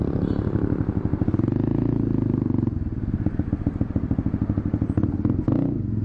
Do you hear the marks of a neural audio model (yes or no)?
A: no